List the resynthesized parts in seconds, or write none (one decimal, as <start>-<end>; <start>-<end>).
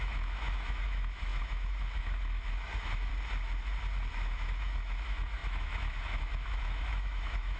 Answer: 0.0-3.1; 4.1-7.6